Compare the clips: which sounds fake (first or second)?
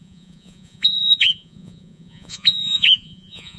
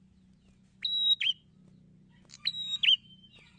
first